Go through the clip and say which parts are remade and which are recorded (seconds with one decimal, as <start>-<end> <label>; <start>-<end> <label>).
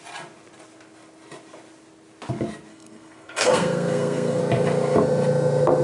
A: 0.0-2.7 recorded; 2.7-4.4 remade; 4.4-5.8 recorded